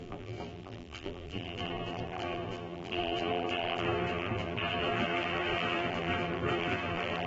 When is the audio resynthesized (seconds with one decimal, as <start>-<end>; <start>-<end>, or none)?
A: 0.0-7.3